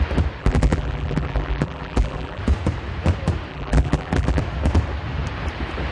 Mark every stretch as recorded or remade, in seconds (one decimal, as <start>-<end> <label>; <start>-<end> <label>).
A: 0.0-0.4 recorded; 0.4-2.4 remade; 2.4-3.5 recorded; 3.5-4.4 remade; 4.4-5.9 recorded